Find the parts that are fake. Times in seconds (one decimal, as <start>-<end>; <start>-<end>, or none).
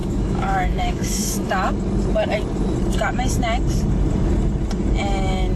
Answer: 0.0-1.7